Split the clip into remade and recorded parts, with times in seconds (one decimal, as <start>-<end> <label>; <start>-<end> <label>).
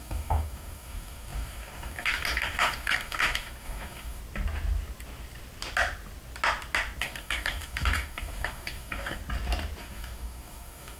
0.0-4.2 remade; 4.2-7.0 recorded; 7.0-9.2 remade; 9.2-9.8 recorded; 9.8-11.0 remade